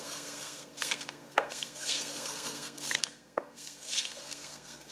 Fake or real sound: fake